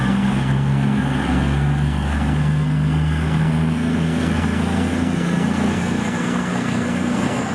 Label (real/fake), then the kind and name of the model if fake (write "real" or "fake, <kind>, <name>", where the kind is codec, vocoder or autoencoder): fake, codec, SNAC